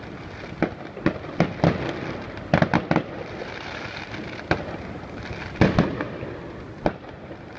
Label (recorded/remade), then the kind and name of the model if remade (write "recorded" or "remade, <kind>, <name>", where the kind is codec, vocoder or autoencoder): recorded